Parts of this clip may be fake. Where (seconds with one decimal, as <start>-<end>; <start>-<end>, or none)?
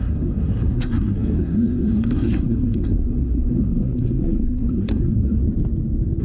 0.0-5.4